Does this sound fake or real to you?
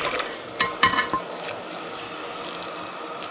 real